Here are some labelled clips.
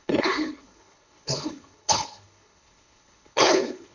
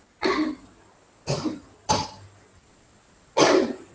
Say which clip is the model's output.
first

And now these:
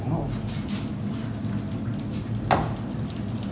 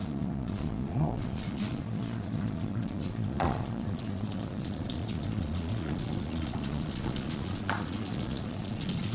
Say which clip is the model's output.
second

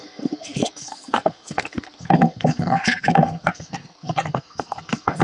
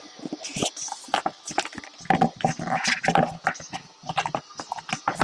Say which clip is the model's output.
first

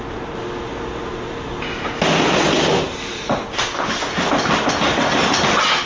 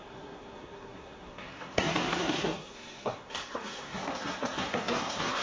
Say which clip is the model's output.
second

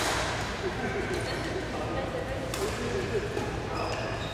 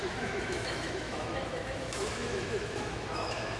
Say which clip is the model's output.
second